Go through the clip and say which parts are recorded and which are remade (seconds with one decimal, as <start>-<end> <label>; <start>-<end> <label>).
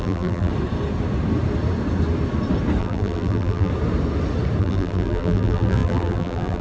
0.0-0.5 remade; 0.5-2.8 recorded; 2.8-3.7 remade; 3.7-4.6 recorded; 4.6-6.6 remade